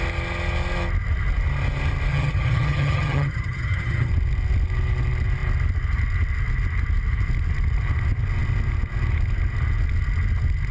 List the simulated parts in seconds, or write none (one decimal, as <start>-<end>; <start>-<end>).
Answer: 2.1-4.1

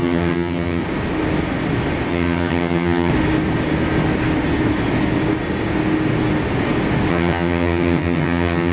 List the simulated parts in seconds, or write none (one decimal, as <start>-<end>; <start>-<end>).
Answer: 0.0-0.8; 2.1-3.1; 7.1-8.7